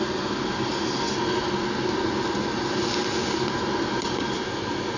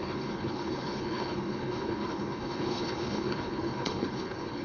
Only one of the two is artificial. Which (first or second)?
second